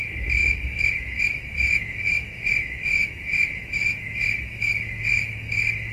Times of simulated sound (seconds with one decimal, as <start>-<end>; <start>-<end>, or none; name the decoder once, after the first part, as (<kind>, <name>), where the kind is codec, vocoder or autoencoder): 0.0-5.9 (autoencoder, DAC-VAE)

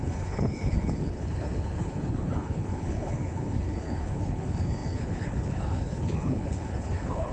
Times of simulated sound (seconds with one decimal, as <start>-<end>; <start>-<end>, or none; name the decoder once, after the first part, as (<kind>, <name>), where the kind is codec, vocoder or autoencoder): 0.0-7.3 (codec, HILCodec)